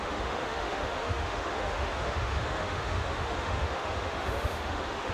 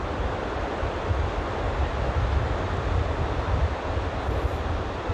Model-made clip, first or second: first